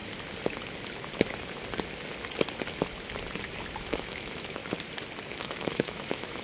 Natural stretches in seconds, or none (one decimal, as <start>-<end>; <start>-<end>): 0.0-3.8; 4.6-5.3